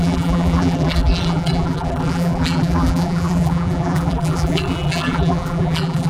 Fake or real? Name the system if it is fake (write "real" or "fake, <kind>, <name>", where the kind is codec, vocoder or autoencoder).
fake, vocoder, BigVGAN v2